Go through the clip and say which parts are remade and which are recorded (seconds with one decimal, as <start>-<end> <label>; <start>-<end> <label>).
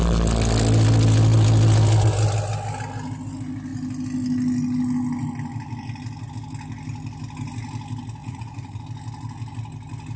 0.0-8.2 recorded; 8.2-8.8 remade; 8.8-10.2 recorded